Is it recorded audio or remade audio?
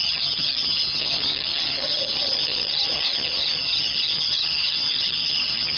remade